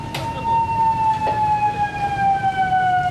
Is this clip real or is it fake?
real